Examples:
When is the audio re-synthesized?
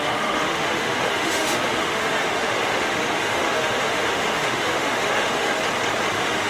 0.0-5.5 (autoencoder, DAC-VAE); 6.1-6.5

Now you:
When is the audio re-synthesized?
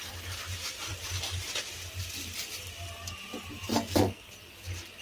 3.7-4.3 (codec, SNAC)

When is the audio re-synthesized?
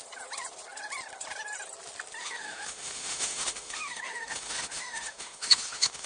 2.2-6.1 (autoencoder, DAC-VAE)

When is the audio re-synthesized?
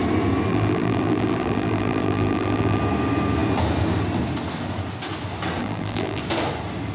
0.5-2.8 (vocoder, BigVGAN v2); 5.6-6.2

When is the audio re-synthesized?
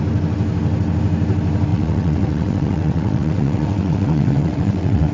1.7-5.1 (vocoder, WaveNeXt)